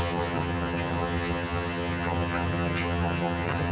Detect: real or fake fake